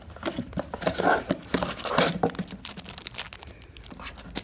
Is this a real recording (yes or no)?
yes